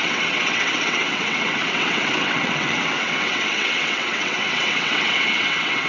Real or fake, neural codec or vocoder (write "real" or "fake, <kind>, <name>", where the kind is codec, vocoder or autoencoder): fake, vocoder, WaveNeXt